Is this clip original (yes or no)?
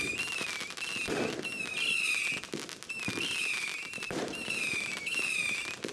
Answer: yes